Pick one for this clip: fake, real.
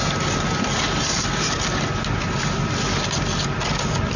real